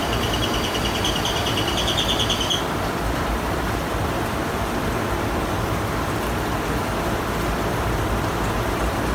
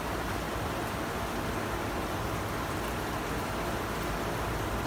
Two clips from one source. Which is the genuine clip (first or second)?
second